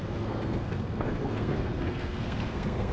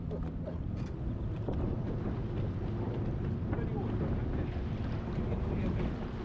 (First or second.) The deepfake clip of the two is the first